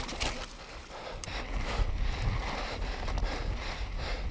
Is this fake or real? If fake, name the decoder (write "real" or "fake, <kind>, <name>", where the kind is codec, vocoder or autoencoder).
real